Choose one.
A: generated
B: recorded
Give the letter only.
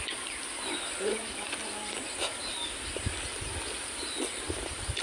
A